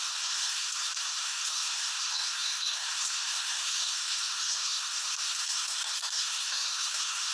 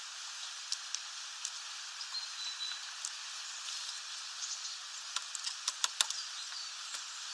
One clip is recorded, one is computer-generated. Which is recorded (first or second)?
second